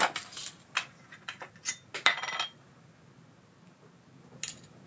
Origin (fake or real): real